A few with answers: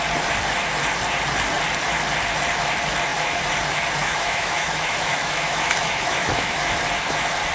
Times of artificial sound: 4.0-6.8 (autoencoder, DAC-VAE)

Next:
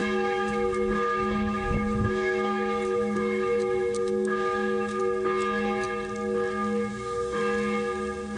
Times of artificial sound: 0.0-5.0 (autoencoder, DAC-VAE); 6.9-7.4

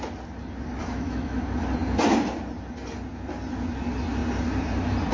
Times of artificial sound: 0.8-1.4 (autoencoder, DAC-VAE)